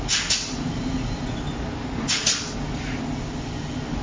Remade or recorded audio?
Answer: recorded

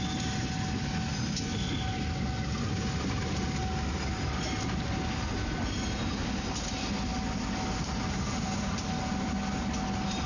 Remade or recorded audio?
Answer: recorded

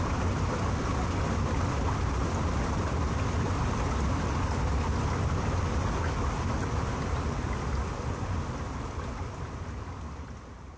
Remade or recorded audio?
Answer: recorded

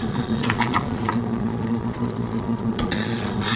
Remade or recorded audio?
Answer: remade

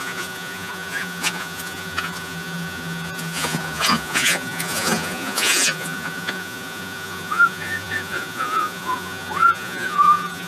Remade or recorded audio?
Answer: remade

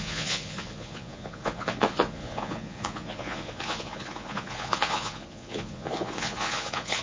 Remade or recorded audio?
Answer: remade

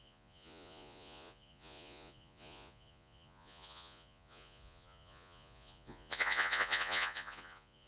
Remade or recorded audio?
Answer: remade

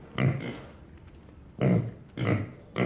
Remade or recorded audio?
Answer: recorded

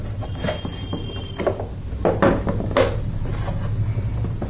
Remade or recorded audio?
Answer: recorded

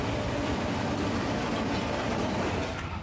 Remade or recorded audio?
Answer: recorded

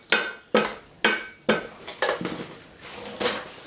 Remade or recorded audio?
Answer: recorded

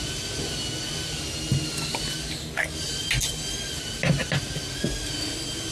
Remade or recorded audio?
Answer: recorded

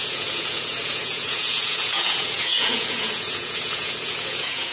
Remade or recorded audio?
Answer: remade